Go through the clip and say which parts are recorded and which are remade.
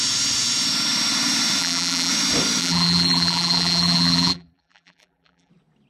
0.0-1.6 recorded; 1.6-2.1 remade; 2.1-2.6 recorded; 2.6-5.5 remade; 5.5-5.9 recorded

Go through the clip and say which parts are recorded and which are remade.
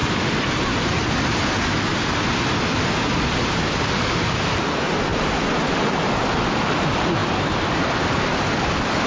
0.0-0.8 remade; 0.8-5.1 recorded; 5.1-6.1 remade; 6.1-7.2 recorded; 7.2-8.4 remade; 8.4-9.1 recorded